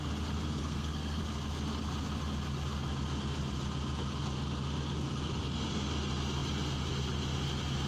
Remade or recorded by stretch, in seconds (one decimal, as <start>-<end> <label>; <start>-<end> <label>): 0.0-0.6 recorded; 0.6-1.2 remade; 1.2-7.9 recorded